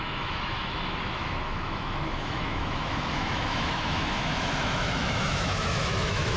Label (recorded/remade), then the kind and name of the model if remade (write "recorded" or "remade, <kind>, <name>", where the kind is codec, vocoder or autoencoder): remade, autoencoder, DAC-VAE